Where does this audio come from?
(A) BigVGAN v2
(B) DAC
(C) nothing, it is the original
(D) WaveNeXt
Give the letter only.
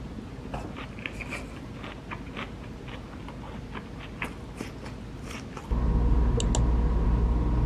C